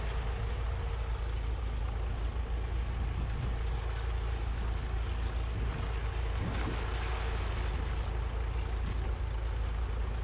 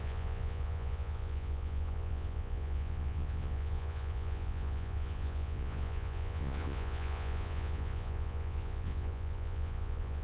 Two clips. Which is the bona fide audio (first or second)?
first